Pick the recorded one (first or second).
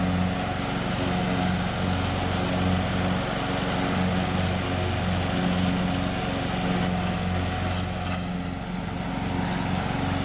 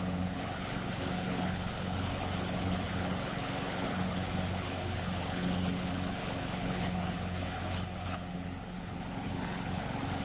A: first